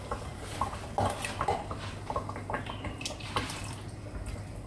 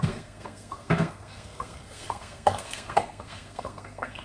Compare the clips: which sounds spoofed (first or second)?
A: second